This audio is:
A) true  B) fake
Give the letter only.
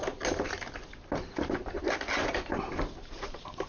A